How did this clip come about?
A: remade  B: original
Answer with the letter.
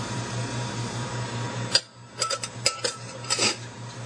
A